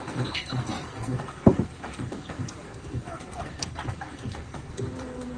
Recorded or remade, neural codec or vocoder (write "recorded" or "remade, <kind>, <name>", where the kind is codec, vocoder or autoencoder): remade, codec, SNAC